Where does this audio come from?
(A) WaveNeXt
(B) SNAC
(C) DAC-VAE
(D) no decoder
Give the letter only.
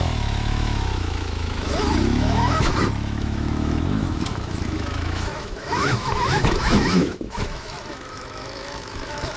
C